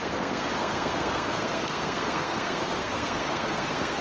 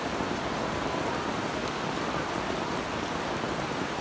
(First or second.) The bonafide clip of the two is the second